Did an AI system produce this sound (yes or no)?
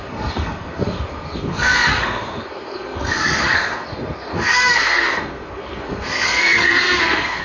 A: yes